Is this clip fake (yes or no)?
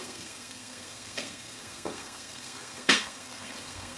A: yes